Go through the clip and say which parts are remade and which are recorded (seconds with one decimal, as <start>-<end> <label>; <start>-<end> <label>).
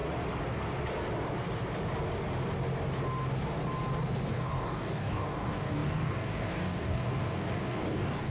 0.0-4.3 recorded; 4.3-8.3 remade